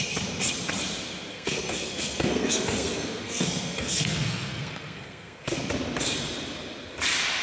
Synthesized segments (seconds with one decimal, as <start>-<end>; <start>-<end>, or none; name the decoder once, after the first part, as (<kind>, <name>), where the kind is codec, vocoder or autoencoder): 1.3-5.7 (codec, SNAC)